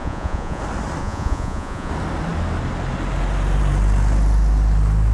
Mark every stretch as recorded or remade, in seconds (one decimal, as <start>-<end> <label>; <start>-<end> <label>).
0.0-0.6 remade; 0.6-1.0 recorded; 1.0-1.9 remade; 1.9-5.1 recorded